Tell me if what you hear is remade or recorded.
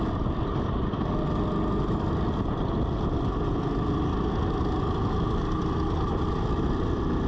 recorded